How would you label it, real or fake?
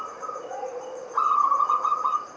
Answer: fake